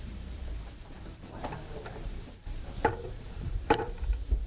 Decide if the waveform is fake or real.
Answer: fake